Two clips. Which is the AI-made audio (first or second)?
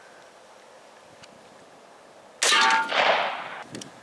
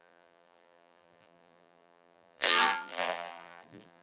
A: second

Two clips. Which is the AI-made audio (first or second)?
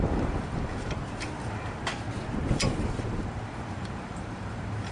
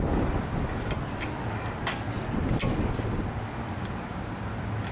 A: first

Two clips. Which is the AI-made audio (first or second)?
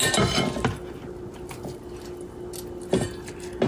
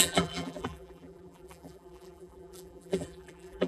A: second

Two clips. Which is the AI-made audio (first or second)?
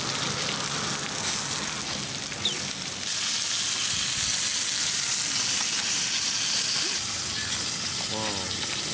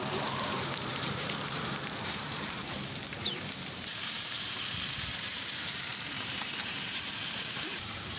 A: second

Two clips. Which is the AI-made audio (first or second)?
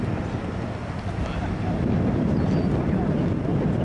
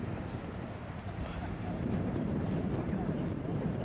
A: second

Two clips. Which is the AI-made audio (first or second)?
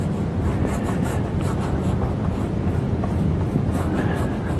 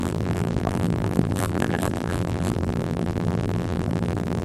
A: second